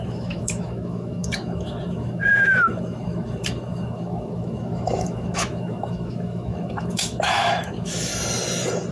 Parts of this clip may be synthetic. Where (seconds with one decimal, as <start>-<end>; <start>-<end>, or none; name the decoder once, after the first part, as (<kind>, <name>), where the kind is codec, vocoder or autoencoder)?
0.0-8.1 (autoencoder, DAC-VAE)

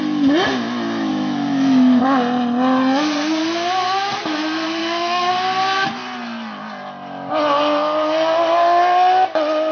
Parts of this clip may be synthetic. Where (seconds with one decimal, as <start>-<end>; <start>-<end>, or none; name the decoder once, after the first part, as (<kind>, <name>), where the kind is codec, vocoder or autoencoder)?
1.1-2.0 (autoencoder, DAC-VAE); 4.8-5.3

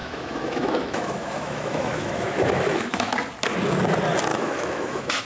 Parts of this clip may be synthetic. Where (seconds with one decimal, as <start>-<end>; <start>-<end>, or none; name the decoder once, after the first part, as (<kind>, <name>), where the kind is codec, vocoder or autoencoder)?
0.0-3.1 (autoencoder, DAC-VAE); 4.3-5.2

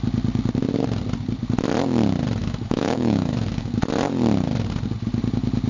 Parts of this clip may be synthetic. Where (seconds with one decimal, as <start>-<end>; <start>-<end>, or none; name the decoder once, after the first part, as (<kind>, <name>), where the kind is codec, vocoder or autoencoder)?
2.4-3.8 (autoencoder, DAC-VAE)